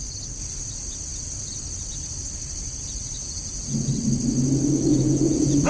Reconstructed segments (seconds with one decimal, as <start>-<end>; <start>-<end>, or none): 3.2-3.9; 4.9-5.7